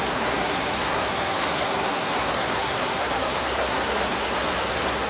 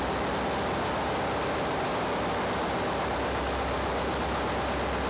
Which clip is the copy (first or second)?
first